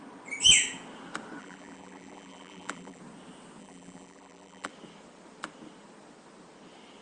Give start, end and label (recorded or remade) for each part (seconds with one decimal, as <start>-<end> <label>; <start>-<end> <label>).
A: 0.0-1.4 recorded; 1.4-3.0 remade; 3.0-3.6 recorded; 3.6-4.7 remade; 4.7-7.0 recorded

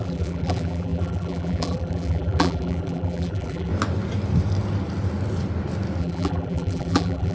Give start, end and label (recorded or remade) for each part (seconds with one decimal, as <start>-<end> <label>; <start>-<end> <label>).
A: 0.0-3.7 remade; 3.7-6.0 recorded; 6.0-7.3 remade

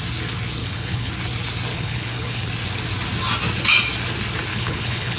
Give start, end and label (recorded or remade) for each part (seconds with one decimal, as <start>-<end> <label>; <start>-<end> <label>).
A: 0.0-0.6 recorded; 0.6-1.1 remade; 1.1-1.7 recorded; 1.7-2.5 remade; 2.5-4.5 recorded; 4.5-5.2 remade

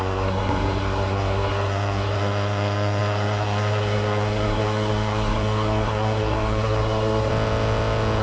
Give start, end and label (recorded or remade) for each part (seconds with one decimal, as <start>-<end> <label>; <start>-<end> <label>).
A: 0.0-7.3 remade; 7.3-8.2 recorded